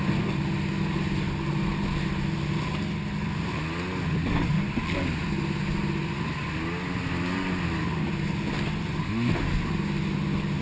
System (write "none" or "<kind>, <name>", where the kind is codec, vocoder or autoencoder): none